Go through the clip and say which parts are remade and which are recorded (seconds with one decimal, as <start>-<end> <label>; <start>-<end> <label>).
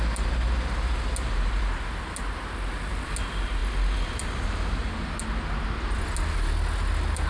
0.0-7.3 recorded